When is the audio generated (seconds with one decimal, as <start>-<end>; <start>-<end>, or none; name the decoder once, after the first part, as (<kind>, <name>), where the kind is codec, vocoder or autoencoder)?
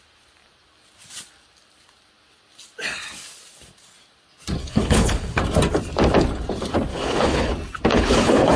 4.6-5.4 (codec, HILCodec); 6.9-7.5; 7.9-8.6